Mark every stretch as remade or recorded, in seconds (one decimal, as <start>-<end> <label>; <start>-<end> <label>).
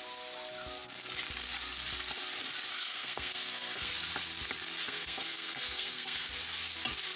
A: 0.0-2.7 recorded; 2.7-3.9 remade; 3.9-4.8 recorded; 4.8-6.3 remade; 6.3-7.2 recorded